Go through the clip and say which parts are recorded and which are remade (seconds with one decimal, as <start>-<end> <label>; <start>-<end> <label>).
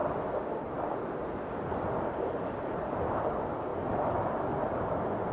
0.0-5.3 recorded